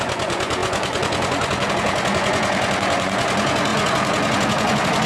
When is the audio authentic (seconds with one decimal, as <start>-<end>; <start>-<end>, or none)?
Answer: none